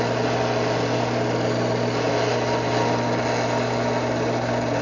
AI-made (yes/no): no